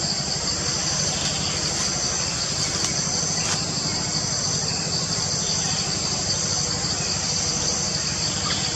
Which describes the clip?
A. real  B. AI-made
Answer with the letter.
A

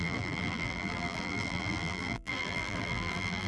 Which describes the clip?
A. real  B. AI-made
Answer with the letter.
B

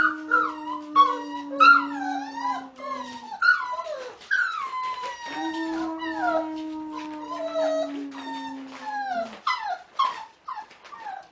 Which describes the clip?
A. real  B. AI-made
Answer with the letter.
A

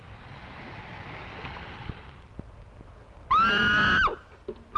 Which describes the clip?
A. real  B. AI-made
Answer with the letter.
A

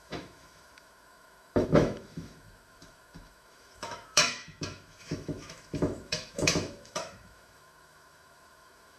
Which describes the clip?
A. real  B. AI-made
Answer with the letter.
B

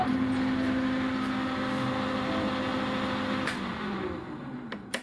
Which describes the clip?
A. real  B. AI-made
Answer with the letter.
A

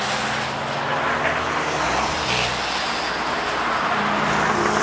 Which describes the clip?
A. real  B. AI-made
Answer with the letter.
A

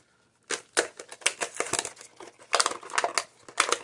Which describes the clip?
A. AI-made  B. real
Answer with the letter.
B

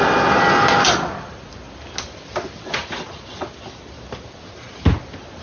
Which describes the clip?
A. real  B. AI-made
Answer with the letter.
A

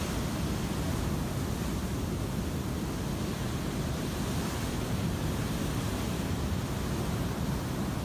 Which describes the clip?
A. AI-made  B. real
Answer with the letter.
B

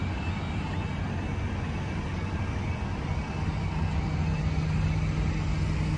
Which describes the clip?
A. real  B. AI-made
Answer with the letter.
A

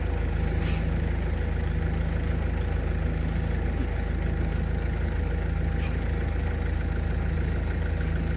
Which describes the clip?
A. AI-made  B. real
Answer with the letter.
B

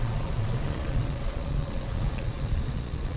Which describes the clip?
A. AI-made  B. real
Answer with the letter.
A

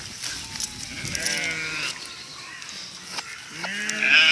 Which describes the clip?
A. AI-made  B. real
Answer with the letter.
B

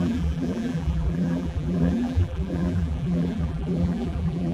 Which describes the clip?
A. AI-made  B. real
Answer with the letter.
A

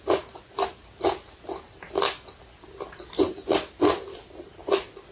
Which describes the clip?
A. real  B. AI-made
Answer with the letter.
A